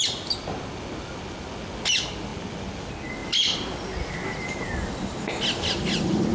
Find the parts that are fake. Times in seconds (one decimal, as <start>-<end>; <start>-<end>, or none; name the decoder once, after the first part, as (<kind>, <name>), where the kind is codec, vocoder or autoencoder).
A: none